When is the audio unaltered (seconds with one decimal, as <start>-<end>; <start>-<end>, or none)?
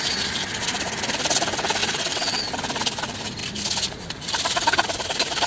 0.0-1.8; 2.4-5.5